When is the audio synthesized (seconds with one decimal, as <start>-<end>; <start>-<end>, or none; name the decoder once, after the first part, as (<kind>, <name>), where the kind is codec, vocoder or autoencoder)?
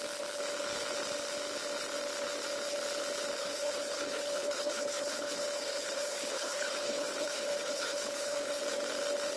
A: 3.4-8.6 (codec, HILCodec)